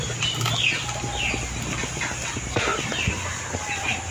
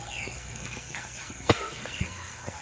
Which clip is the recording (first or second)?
first